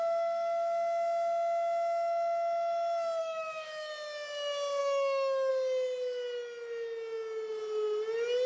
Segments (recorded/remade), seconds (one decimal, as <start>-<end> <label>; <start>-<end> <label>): 0.0-3.2 recorded; 3.2-3.9 remade; 3.9-4.8 recorded; 4.8-5.5 remade; 5.5-8.5 recorded